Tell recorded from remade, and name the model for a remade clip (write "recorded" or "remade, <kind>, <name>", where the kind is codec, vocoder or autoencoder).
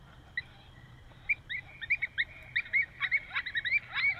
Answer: recorded